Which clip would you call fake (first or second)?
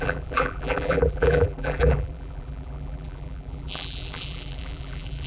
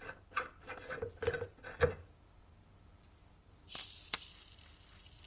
first